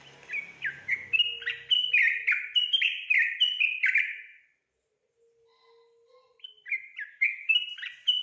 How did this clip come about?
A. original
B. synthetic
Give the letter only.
A